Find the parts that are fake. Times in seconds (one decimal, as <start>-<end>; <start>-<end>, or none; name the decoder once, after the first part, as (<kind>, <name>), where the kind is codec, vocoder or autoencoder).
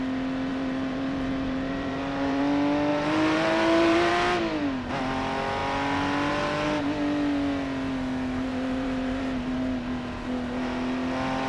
0.5-2.4 (vocoder, BigVGAN v2); 2.9-4.1; 8.5-9.2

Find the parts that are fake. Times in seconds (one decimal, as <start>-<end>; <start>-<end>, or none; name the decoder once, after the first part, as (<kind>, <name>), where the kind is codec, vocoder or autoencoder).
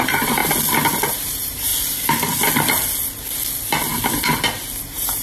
0.0-0.4 (vocoder, BigVGAN v2); 1.1-1.7; 4.8-5.2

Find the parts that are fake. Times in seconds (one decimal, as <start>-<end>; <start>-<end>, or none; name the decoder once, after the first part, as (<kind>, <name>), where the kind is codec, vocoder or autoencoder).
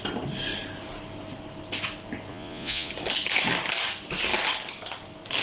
2.3-2.9 (vocoder, Vocos)